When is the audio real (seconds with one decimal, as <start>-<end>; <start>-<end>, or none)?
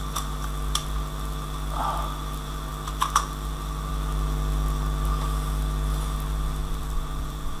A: 0.0-6.6